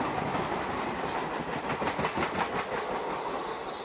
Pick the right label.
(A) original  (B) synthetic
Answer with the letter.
A